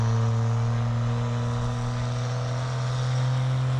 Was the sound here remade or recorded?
recorded